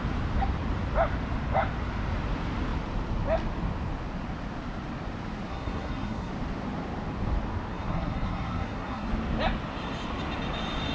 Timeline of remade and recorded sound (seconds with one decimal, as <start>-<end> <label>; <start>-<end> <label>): 0.0-5.5 recorded; 5.5-6.3 remade; 6.3-7.7 recorded; 7.7-9.1 remade; 9.1-10.9 recorded